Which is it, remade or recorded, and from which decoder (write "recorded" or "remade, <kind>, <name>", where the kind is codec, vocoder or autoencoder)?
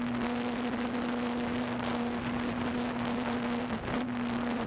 recorded